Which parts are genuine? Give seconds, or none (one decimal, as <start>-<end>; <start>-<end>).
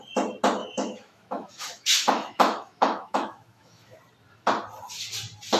0.0-0.6; 4.0-5.6